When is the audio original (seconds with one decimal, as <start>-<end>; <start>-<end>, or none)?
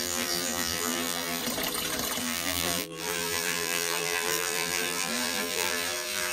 1.4-2.2